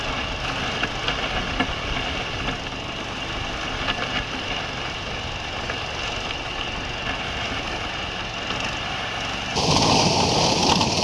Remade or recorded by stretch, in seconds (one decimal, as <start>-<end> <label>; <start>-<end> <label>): 0.0-11.0 recorded